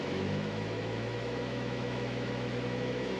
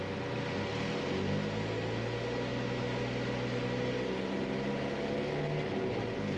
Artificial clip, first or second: first